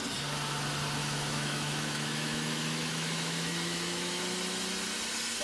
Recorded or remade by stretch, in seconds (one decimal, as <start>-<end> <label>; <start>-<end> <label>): 0.0-1.0 recorded; 1.0-4.2 remade; 4.2-5.4 recorded